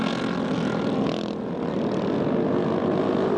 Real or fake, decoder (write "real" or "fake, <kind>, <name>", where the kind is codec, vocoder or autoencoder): real